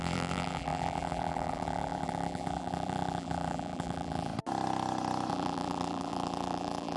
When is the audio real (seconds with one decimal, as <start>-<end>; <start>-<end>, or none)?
4.3-5.3